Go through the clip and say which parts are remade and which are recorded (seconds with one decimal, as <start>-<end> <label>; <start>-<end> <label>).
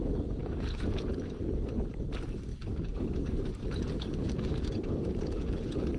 0.0-0.4 recorded; 0.4-1.4 remade; 1.4-2.5 recorded; 2.5-5.6 remade; 5.6-6.0 recorded